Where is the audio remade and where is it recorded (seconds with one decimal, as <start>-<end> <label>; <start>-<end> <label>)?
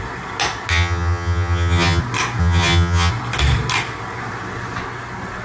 0.0-0.7 recorded; 0.7-2.0 remade; 2.0-2.4 recorded; 2.4-3.1 remade; 3.1-5.4 recorded